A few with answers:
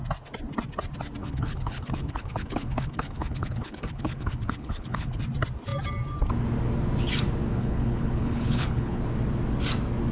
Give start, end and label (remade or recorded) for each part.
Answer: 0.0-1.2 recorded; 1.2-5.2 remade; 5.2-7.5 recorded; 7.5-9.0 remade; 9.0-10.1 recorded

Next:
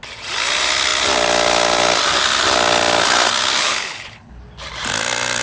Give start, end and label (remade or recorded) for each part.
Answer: 0.0-3.6 recorded; 3.6-4.4 remade; 4.4-5.4 recorded

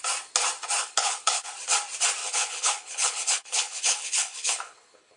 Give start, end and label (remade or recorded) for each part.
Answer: 0.0-0.8 recorded; 0.8-1.5 remade; 1.5-2.2 recorded; 2.2-5.2 remade

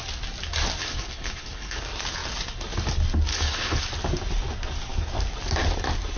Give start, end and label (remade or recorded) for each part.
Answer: 0.0-0.8 recorded; 0.8-1.8 remade; 1.8-3.3 recorded; 3.3-3.8 remade; 3.8-6.2 recorded

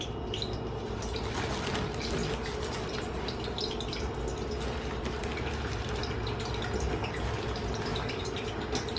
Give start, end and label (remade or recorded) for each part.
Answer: 0.0-9.0 recorded